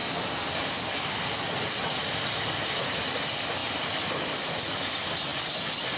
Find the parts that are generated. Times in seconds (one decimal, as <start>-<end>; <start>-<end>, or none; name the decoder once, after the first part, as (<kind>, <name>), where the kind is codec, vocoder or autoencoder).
none